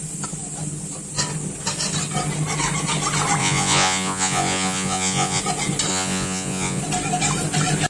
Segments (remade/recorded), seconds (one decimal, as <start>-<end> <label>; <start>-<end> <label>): 0.0-3.4 recorded; 3.4-5.4 remade; 5.4-5.9 recorded; 5.9-6.8 remade; 6.8-7.9 recorded